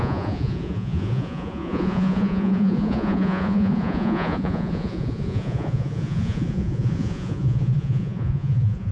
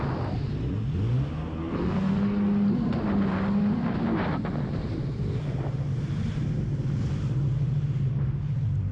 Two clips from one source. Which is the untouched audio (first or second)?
second